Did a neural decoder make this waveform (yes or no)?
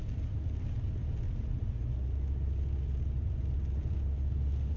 no